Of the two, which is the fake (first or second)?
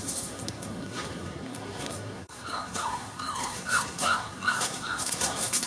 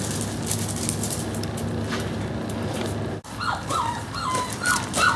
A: first